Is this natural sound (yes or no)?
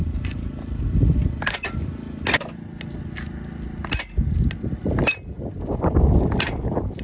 yes